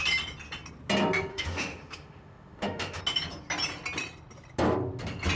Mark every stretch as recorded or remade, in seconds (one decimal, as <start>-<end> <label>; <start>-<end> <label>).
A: 0.0-1.3 recorded; 1.3-3.0 remade; 3.0-5.4 recorded